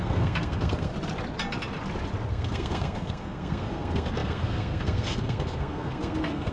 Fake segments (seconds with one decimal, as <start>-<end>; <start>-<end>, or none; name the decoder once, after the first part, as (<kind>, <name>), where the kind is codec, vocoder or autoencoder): 0.0-0.9 (codec, SNAC); 2.3-6.5